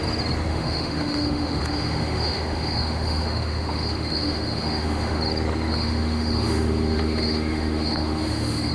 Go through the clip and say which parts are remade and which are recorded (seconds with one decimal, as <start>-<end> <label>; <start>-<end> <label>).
0.0-0.5 recorded; 0.5-5.2 remade; 5.2-5.7 recorded; 5.7-8.7 remade